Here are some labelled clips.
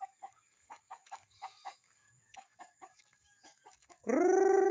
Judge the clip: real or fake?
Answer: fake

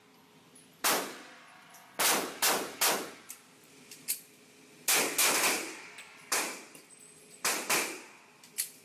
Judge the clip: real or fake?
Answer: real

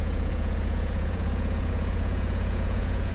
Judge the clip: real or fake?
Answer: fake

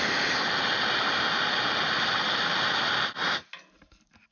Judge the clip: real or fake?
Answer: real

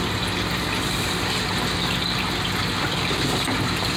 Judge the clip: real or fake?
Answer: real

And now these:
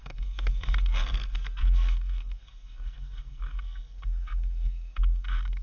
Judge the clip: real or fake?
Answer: fake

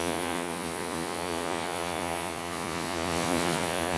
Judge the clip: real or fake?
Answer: fake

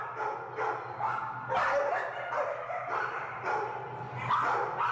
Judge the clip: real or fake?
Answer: real